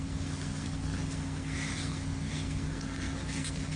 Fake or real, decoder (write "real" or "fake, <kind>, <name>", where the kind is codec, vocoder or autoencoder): fake, codec, SNAC